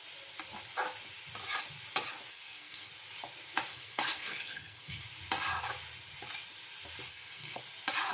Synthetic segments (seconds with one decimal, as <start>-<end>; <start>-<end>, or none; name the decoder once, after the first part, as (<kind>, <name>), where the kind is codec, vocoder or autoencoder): 2.3-2.9 (codec, SNAC); 3.7-5.0; 7.1-7.6